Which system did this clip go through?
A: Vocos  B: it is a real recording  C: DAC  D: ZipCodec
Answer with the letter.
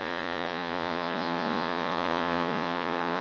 A